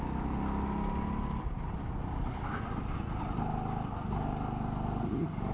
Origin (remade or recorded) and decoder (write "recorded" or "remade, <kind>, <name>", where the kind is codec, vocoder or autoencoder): recorded